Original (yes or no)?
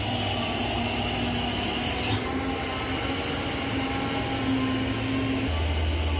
yes